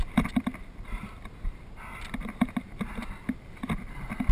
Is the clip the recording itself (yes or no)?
yes